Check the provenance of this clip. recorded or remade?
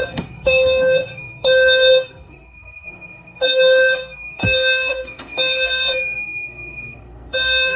remade